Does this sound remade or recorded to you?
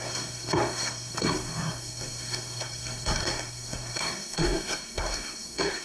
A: remade